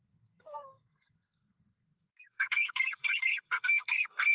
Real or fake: fake